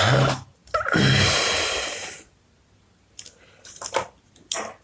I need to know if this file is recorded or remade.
recorded